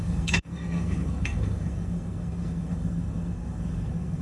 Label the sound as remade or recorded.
remade